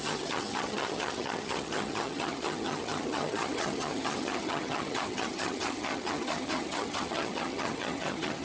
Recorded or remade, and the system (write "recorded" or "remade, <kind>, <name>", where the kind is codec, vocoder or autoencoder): remade, vocoder, HiFi-GAN